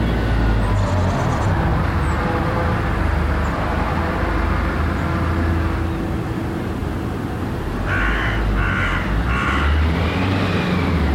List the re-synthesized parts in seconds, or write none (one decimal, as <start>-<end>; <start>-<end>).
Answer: none

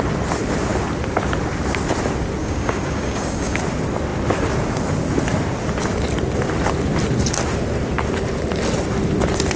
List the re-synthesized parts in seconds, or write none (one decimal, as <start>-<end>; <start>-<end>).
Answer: 2.4-3.6

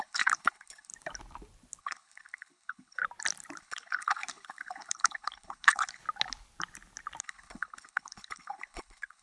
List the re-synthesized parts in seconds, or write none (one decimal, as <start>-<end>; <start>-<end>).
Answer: 0.0-0.9; 1.8-3.0; 3.6-6.0; 7.2-9.2

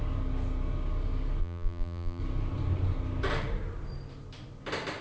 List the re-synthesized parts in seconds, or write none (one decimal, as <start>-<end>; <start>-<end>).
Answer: 1.4-2.2